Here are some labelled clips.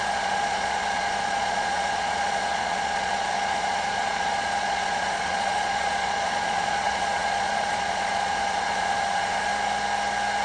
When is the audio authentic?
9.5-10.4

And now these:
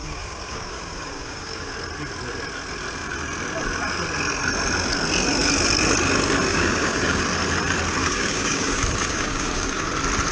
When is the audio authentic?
1.7-6.5; 7.2-8.0; 9.9-10.3

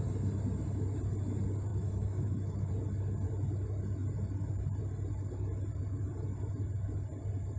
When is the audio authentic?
0.0-1.7; 2.7-7.6